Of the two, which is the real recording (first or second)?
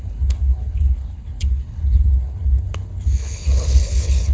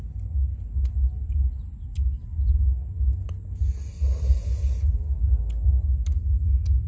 second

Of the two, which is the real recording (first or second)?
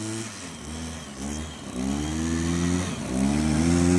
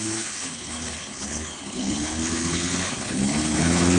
first